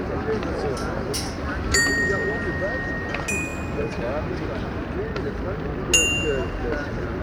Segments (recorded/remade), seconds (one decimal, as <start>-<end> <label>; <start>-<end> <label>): 0.0-7.2 recorded